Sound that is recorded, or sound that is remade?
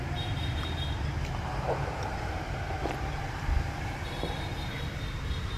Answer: remade